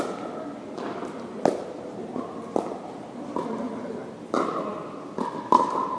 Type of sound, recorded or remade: recorded